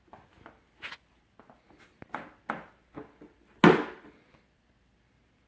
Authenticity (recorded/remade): recorded